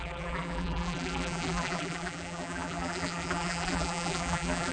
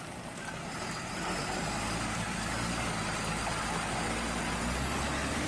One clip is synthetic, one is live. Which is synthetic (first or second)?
first